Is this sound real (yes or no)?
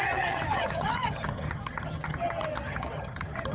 no